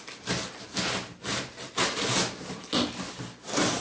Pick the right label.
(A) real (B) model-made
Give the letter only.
A